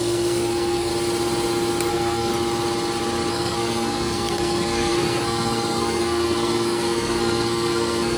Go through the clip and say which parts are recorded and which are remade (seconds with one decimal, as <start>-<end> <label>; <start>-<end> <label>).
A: 0.0-0.9 remade; 0.9-1.9 recorded; 1.9-2.3 remade; 2.3-3.3 recorded; 3.3-8.2 remade